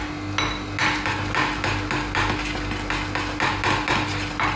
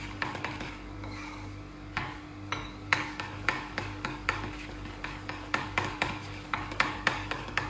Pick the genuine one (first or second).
first